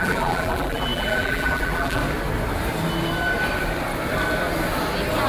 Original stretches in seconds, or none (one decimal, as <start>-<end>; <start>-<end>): 2.0-5.3